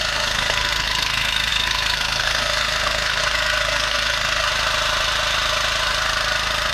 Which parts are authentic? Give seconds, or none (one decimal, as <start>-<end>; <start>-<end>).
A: 4.5-6.7